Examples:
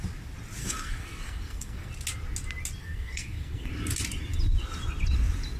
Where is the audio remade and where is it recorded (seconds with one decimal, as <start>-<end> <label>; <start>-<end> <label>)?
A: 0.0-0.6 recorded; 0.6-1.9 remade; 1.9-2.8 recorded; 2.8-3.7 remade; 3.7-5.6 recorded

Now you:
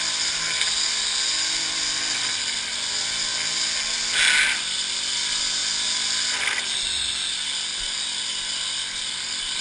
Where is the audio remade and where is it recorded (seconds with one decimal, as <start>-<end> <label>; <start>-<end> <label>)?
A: 0.0-9.6 recorded

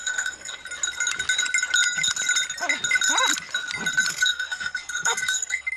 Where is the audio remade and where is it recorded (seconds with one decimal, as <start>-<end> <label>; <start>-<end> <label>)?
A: 0.0-0.6 remade; 0.6-4.1 recorded; 4.1-5.8 remade